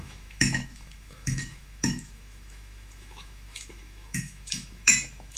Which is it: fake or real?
fake